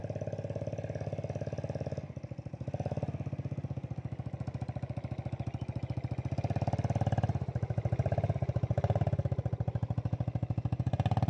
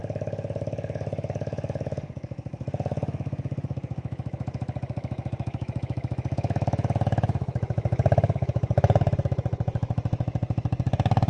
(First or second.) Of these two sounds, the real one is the first